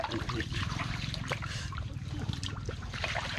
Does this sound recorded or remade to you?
remade